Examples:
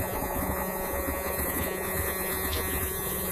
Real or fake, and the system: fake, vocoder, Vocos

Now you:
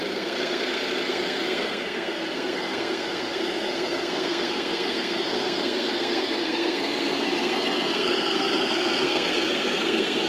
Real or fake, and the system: fake, codec, SNAC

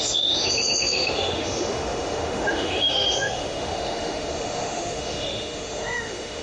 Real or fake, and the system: fake, autoencoder, DAC-VAE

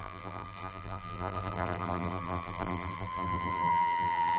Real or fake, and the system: fake, vocoder, BigVGAN v2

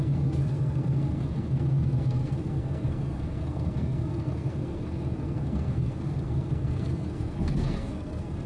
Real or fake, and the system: fake, codec, SNAC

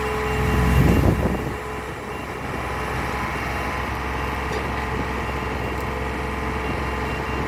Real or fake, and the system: real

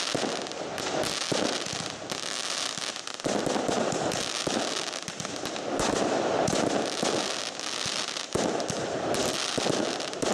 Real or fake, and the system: real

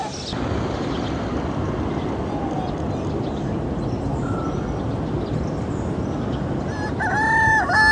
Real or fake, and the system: real